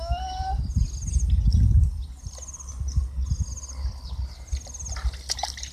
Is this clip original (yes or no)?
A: yes